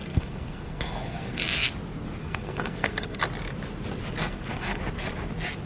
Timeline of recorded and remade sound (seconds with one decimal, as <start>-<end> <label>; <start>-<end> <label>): 0.0-1.7 remade; 1.7-2.2 recorded; 2.2-3.2 remade; 3.2-4.2 recorded; 4.2-4.8 remade; 4.8-5.7 recorded